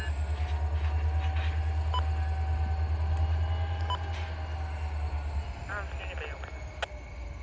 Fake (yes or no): no